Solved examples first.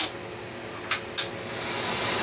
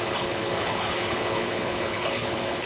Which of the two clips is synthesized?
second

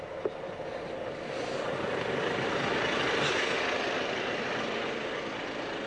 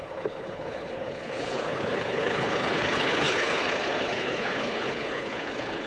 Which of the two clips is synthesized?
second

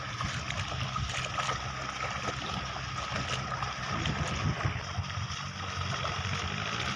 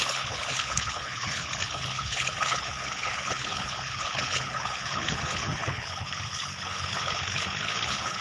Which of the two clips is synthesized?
second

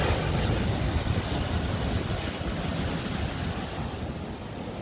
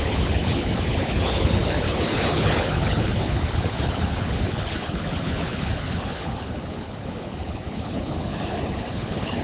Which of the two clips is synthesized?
second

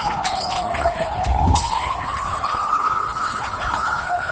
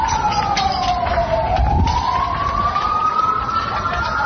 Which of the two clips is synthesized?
first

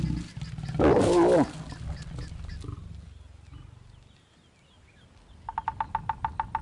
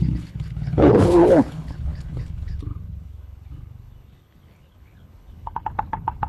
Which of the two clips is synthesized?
second